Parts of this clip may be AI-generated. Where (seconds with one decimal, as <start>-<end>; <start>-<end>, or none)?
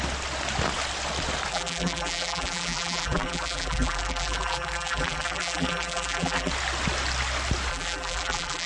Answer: 1.5-6.5; 7.7-8.7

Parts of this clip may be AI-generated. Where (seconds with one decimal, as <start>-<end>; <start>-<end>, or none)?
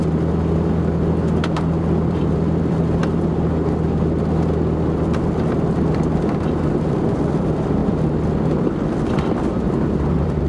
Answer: 0.0-3.0; 6.6-10.5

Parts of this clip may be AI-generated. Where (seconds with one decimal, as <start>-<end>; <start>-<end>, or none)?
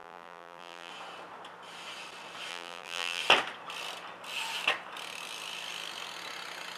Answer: 0.0-0.9; 2.5-3.2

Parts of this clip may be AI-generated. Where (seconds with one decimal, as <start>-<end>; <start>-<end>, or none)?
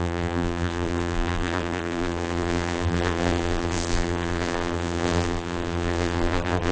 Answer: 0.0-6.7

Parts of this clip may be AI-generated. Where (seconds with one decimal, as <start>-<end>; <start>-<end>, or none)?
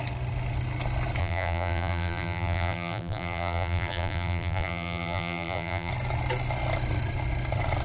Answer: 1.2-5.9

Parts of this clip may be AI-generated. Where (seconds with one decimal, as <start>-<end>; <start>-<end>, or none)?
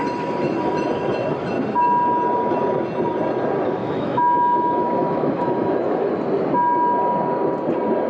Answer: 3.8-6.1